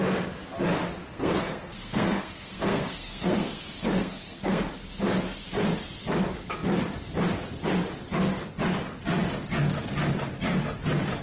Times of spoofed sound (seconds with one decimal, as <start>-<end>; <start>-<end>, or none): 1.1-4.7